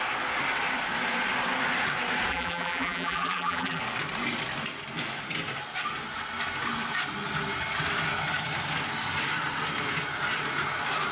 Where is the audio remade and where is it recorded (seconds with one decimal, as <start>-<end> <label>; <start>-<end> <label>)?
0.0-2.3 recorded; 2.3-3.8 remade; 3.8-11.1 recorded

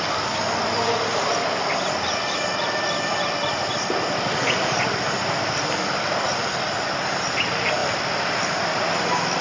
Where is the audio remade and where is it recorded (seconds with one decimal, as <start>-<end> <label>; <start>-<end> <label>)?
0.0-9.4 recorded

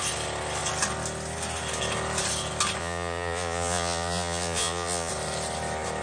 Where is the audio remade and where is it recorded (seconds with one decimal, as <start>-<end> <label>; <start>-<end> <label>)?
0.0-2.8 recorded; 2.8-5.1 remade; 5.1-6.0 recorded